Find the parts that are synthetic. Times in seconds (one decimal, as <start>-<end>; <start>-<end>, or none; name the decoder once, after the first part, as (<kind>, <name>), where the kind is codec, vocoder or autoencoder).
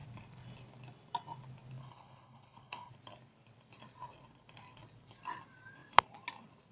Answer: 1.8-2.9 (codec, HILCodec)